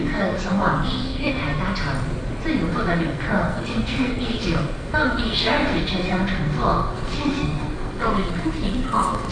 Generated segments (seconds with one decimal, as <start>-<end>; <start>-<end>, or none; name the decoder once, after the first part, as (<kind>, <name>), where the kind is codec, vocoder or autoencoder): 0.0-1.4 (codec, SNAC); 2.7-9.3